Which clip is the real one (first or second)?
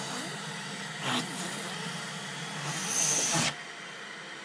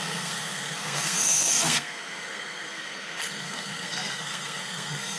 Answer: first